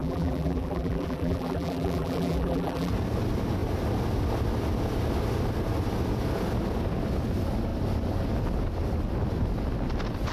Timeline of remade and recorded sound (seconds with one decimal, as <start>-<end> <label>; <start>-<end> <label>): 0.0-2.9 remade; 2.9-10.3 recorded